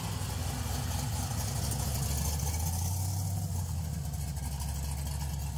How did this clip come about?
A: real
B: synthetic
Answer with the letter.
A